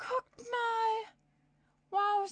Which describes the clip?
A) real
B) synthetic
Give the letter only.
A